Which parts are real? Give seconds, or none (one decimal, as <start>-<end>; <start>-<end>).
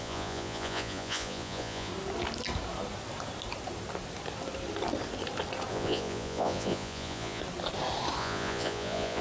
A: 1.9-5.7; 7.4-8.2